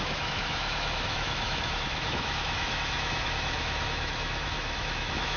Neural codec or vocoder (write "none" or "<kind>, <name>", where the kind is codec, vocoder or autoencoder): autoencoder, DAC-VAE